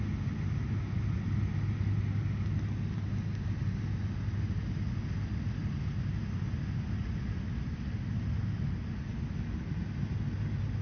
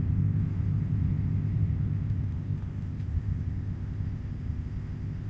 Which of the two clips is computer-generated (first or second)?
second